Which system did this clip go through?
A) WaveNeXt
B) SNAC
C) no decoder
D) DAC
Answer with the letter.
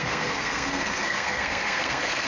B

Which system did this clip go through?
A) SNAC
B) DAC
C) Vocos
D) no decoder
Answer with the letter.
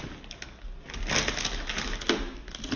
D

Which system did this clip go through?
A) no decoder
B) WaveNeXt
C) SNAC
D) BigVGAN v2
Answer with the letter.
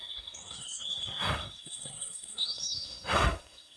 C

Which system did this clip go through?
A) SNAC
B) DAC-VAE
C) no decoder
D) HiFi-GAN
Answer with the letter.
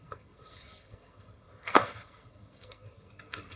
A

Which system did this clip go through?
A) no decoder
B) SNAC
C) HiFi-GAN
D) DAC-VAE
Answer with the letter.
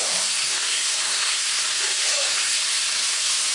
B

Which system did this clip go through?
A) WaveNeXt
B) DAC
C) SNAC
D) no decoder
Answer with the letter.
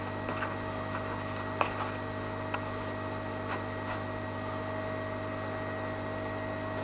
D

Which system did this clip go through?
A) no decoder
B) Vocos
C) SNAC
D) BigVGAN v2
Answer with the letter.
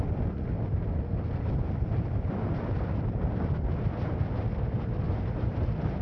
A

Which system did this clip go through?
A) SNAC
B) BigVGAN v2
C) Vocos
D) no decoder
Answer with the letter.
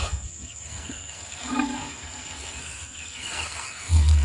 A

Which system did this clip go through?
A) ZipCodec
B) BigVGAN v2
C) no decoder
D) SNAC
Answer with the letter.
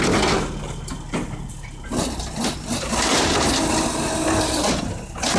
C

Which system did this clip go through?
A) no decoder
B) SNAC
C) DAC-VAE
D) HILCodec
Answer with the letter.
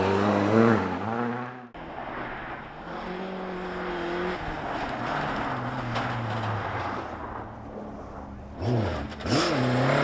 A